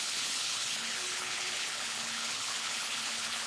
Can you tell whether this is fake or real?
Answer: fake